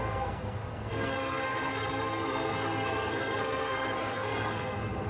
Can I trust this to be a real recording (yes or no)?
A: no